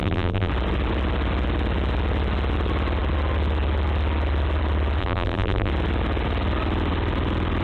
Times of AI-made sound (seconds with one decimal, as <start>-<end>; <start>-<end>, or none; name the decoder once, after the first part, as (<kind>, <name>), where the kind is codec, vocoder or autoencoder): 0.0-0.5 (vocoder, BigVGAN v2); 5.0-5.7